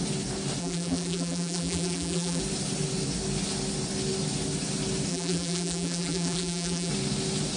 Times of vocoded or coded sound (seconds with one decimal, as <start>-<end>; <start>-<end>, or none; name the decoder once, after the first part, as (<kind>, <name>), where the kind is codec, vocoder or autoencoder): 0.6-2.4 (vocoder, BigVGAN v2); 5.1-6.9